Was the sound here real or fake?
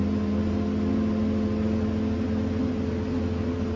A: real